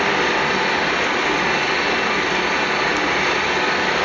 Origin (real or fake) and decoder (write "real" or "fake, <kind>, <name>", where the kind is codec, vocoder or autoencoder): real